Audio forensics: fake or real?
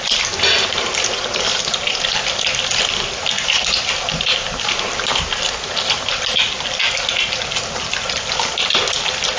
real